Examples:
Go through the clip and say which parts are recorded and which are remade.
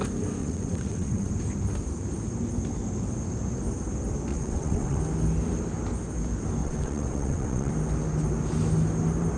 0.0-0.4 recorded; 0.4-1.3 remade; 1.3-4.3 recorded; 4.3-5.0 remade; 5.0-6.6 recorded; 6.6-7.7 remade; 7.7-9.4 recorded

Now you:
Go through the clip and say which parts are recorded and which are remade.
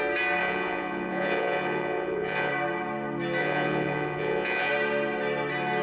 0.0-0.4 recorded; 0.4-2.5 remade; 2.5-3.4 recorded; 3.4-4.7 remade; 4.7-5.8 recorded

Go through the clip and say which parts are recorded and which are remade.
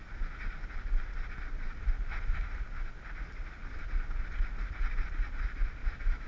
0.0-5.8 recorded; 5.8-6.3 remade